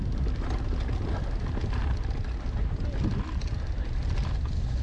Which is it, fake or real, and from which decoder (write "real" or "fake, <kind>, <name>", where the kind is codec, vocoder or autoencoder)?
real